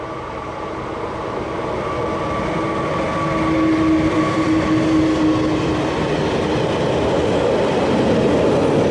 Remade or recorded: recorded